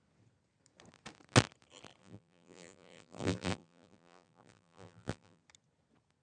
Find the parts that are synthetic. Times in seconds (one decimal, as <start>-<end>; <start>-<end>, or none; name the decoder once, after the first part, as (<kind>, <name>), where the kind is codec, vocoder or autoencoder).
2.0-5.4 (vocoder, BigVGAN v2)

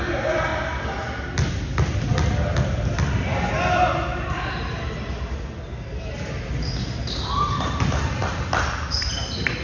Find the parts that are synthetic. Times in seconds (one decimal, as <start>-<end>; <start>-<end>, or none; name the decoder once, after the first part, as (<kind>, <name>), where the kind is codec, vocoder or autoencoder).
none

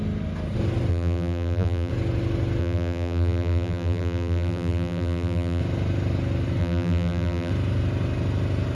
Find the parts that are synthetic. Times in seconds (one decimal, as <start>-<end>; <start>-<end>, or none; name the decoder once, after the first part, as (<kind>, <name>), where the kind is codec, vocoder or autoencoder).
0.9-1.9 (vocoder, BigVGAN v2); 2.6-5.6; 6.6-7.5